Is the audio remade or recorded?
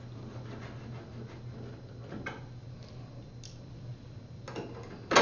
recorded